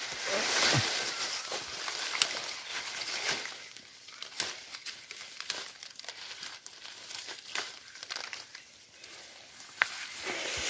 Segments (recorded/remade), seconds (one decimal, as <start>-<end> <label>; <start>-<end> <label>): 0.0-10.7 recorded